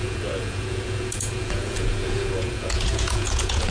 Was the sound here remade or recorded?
remade